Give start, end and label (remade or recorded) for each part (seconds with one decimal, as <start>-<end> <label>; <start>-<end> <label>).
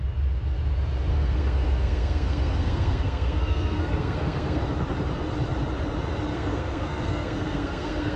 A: 0.0-1.1 recorded; 1.1-4.6 remade; 4.6-6.3 recorded; 6.3-8.2 remade